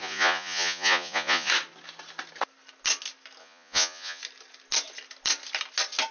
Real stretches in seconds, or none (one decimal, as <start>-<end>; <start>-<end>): 1.5-3.4; 4.2-6.1